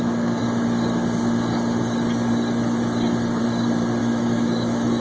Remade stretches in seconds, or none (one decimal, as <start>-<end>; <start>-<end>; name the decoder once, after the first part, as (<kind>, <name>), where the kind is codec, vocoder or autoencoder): 4.0-5.0 (autoencoder, DAC-VAE)